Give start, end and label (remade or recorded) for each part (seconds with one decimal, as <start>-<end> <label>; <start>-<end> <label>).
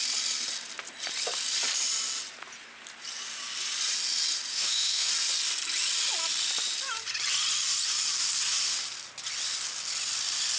0.0-4.5 recorded; 4.5-5.1 remade; 5.1-10.6 recorded